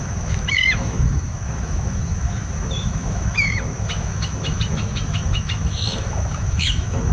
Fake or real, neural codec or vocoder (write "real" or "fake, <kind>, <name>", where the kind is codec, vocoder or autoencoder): fake, autoencoder, DAC-VAE